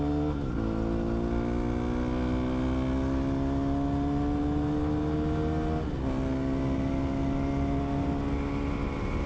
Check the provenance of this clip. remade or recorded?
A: recorded